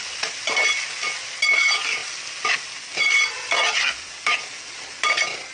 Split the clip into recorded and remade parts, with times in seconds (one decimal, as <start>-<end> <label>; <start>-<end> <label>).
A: 0.0-5.5 recorded